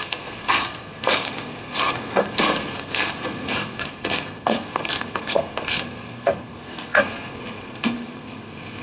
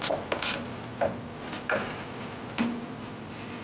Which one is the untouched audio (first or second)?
second